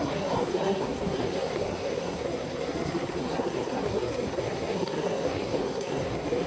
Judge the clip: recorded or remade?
remade